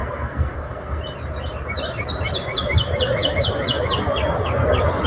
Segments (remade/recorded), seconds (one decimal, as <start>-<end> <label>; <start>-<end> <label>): 0.0-1.0 remade; 1.0-5.1 recorded